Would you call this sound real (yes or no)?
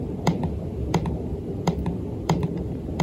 yes